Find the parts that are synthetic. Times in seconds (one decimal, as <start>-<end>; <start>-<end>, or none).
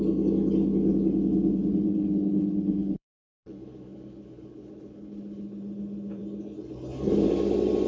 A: 1.7-5.6